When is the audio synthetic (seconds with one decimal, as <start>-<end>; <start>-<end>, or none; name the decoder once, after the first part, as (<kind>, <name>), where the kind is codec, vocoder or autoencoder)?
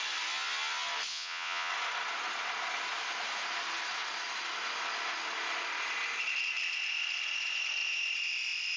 1.1-1.7 (vocoder, Vocos)